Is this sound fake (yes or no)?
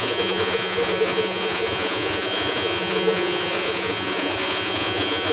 yes